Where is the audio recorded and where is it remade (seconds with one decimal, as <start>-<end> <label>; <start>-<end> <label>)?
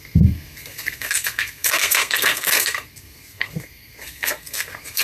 0.0-5.0 remade